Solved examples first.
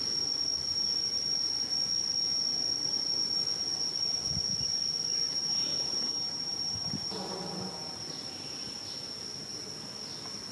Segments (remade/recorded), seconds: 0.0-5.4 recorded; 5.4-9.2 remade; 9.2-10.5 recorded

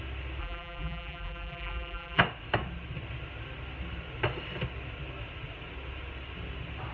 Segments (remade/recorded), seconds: 0.0-0.4 recorded; 0.4-2.2 remade; 2.2-6.9 recorded

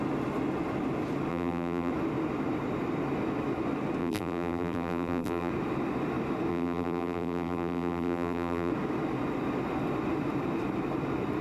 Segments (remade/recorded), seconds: 0.0-1.3 recorded; 1.3-1.9 remade; 1.9-4.0 recorded; 4.0-5.5 remade; 5.5-6.5 recorded; 6.5-8.7 remade; 8.7-11.4 recorded

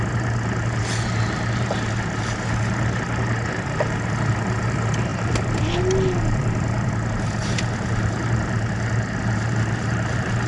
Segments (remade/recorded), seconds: 0.0-5.1 recorded; 5.1-6.9 remade; 6.9-10.5 recorded

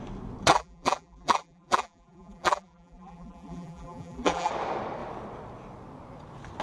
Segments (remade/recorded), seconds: 0.0-0.5 recorded; 0.5-4.5 remade; 4.5-6.6 recorded

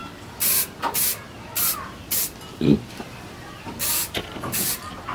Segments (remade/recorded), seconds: 0.0-1.1 remade; 1.1-1.8 recorded; 1.8-5.1 remade

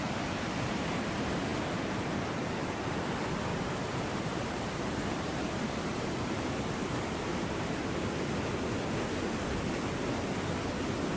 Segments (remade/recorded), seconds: 0.0-3.5 recorded; 3.5-6.1 remade; 6.1-7.2 recorded; 7.2-7.8 remade; 7.8-11.2 recorded